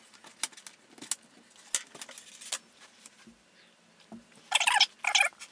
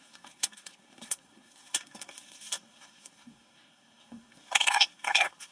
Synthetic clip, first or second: second